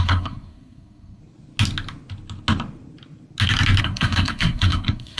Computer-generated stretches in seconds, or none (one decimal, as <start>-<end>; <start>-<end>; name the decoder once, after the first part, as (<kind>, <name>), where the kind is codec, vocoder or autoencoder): 0.0-1.2 (codec, SNAC); 3.8-5.2

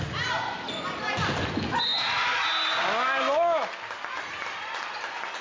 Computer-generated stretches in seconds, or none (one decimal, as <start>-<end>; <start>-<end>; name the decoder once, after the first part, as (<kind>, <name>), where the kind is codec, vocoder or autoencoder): none